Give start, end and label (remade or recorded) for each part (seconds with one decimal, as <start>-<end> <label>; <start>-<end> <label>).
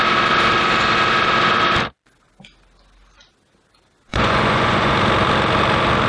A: 0.0-4.1 recorded; 4.1-4.9 remade; 4.9-6.1 recorded